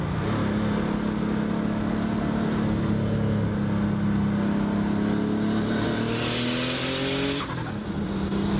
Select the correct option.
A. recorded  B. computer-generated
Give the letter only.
A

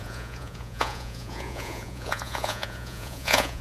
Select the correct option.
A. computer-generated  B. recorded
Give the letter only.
A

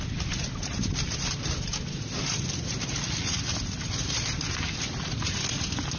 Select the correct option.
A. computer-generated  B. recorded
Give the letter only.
B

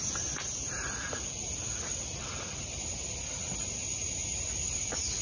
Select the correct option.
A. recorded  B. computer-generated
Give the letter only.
A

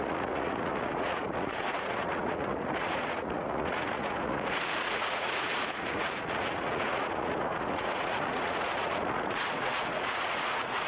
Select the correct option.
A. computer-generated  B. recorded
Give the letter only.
A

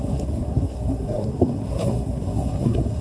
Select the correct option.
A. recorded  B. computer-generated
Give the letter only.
B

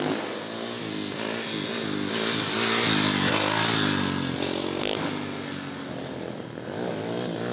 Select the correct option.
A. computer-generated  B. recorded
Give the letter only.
B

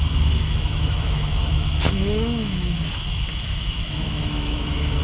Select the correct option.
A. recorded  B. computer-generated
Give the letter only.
B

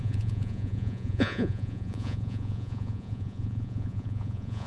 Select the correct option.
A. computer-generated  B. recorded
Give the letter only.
A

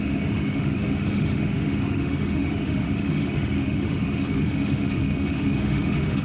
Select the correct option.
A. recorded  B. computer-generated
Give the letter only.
B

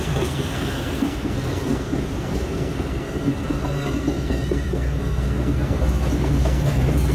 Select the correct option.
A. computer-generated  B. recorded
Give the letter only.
A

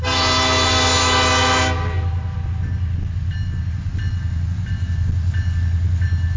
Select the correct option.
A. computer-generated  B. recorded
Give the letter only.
B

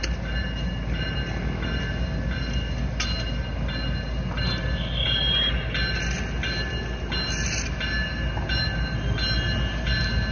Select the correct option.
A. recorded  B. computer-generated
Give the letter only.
A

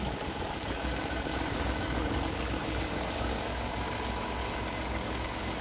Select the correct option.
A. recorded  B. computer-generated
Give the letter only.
B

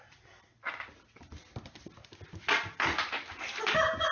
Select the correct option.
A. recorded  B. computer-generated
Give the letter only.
A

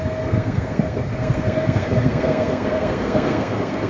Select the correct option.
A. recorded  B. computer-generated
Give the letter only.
B